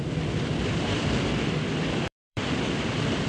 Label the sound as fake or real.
fake